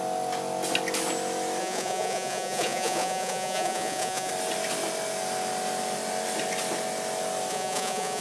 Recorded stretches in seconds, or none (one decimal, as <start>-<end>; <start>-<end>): 0.0-1.6; 4.3-7.5